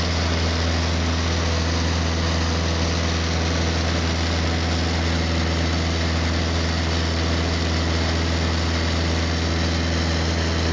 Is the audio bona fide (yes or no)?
yes